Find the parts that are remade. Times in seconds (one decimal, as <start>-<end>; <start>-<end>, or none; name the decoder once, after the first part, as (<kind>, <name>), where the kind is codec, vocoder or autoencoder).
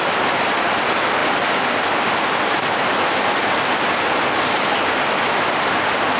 none